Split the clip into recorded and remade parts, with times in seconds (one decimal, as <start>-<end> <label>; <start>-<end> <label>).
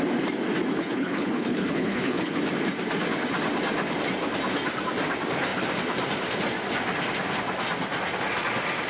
0.0-0.7 recorded; 0.7-2.4 remade; 2.4-8.9 recorded